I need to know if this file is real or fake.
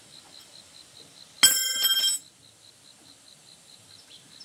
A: real